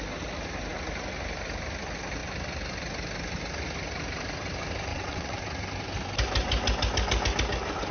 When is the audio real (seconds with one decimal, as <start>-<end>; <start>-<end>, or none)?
0.0-4.9; 5.4-7.9